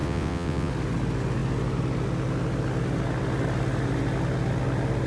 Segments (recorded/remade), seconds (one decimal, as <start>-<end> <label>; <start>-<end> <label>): 0.0-0.7 remade; 0.7-5.1 recorded